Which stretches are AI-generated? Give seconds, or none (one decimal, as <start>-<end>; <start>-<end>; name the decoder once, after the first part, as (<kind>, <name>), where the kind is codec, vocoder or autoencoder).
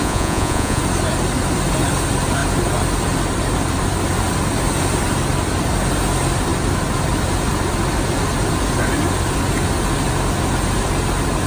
0.0-0.8 (vocoder, Vocos)